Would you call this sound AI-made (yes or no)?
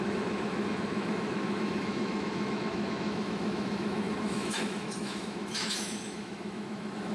yes